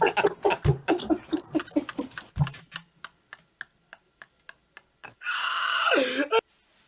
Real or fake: real